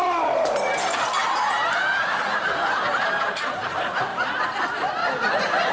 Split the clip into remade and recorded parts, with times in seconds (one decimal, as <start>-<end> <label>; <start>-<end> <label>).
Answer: 0.0-1.2 remade; 1.2-1.7 recorded; 1.7-4.1 remade; 4.1-4.6 recorded; 4.6-5.0 remade; 5.0-5.7 recorded